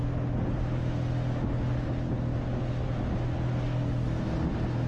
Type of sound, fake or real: real